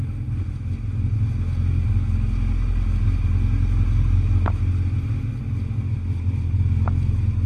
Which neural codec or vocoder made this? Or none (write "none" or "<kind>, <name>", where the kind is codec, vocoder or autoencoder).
none